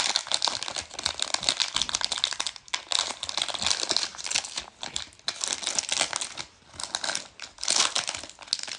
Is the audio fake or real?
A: real